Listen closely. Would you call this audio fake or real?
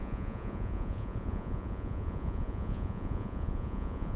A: fake